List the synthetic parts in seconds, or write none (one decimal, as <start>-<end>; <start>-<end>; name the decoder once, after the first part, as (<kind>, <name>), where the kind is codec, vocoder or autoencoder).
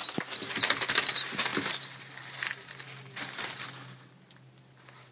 none